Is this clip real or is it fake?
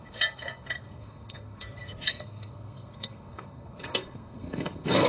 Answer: fake